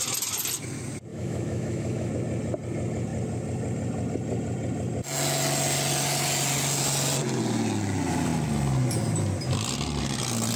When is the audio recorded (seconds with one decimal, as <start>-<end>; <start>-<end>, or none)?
0.0-1.1; 2.1-10.6